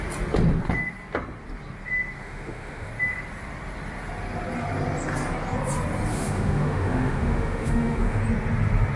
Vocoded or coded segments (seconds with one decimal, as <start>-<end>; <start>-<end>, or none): 2.2-2.9; 6.1-8.2